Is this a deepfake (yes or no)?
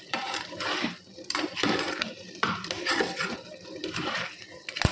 yes